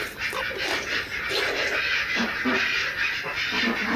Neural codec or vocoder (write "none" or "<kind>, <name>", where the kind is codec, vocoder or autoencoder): none